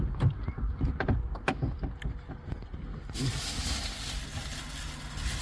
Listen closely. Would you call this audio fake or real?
real